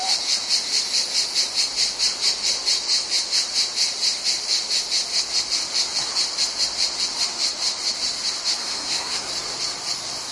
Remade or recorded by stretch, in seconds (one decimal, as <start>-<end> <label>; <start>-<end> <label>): 0.0-8.6 recorded; 8.6-9.3 remade; 9.3-10.3 recorded